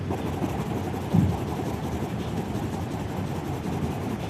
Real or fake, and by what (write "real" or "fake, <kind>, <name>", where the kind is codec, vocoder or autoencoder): real